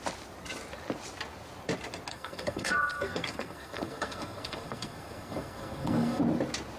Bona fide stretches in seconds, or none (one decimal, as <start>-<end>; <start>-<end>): 0.0-2.1; 6.2-6.8